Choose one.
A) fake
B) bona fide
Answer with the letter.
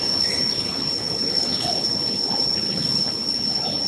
A